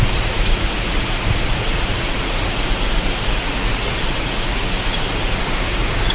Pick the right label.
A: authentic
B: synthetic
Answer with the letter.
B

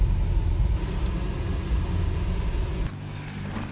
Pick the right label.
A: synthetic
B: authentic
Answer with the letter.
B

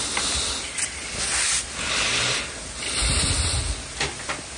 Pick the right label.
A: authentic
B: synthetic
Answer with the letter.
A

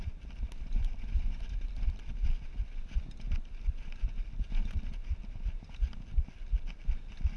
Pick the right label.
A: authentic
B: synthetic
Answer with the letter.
A